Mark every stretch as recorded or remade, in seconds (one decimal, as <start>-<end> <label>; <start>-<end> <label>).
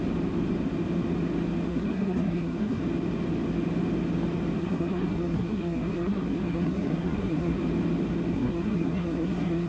0.0-1.7 recorded; 1.7-2.8 remade; 2.8-4.6 recorded; 4.6-7.6 remade; 7.6-8.3 recorded; 8.3-9.7 remade